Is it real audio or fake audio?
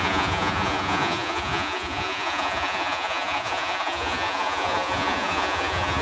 fake